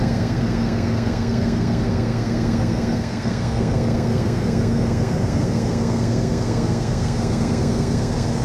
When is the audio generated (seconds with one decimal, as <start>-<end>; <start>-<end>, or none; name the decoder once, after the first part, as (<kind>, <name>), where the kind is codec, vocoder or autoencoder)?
0.0-8.4 (codec, SNAC)